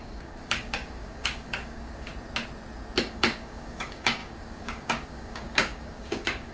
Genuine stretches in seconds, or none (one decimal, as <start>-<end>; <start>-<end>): 2.1-3.0